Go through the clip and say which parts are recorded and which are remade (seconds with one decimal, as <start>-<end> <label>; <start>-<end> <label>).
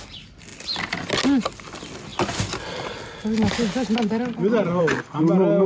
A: 0.0-5.7 recorded